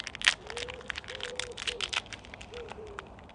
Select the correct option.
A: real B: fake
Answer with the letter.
A